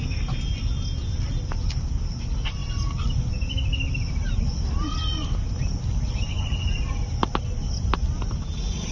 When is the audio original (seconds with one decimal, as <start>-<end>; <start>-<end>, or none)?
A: 0.0-8.9